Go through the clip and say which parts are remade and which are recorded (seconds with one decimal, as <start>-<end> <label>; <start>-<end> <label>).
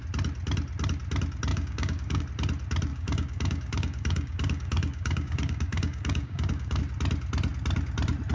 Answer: 0.0-1.5 recorded; 1.5-2.2 remade; 2.2-2.9 recorded; 2.9-6.8 remade; 6.8-8.3 recorded